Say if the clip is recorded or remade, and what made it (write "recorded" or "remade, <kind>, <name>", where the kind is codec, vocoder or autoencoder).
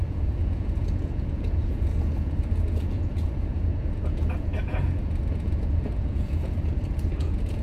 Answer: remade, vocoder, Vocos